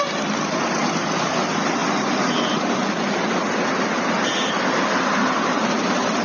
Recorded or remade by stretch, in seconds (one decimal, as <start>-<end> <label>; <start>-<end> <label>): 0.0-6.2 recorded